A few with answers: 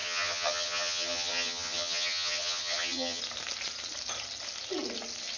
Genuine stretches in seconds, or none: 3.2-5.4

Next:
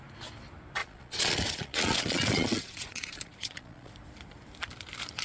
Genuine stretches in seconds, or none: 0.0-0.8; 3.9-5.2